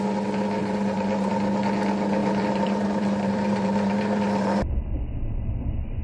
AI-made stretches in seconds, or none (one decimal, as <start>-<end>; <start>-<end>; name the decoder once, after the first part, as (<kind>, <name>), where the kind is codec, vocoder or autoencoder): 0.6-1.3 (vocoder, BigVGAN v2); 2.2-6.0